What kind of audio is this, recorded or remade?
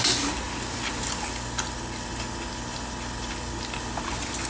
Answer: recorded